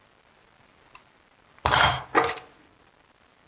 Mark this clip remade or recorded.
recorded